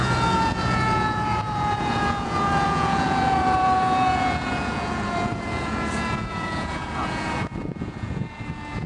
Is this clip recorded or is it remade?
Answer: remade